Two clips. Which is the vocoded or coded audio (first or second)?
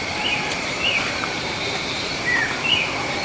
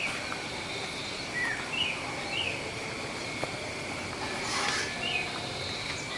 first